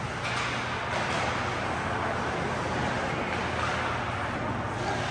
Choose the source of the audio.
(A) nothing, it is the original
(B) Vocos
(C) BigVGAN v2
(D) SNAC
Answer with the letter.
A